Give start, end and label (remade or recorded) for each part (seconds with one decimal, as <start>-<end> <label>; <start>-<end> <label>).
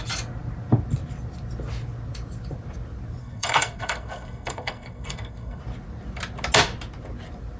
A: 0.0-3.2 recorded; 3.2-5.6 remade; 5.6-7.6 recorded